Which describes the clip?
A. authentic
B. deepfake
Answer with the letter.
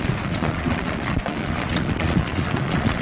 B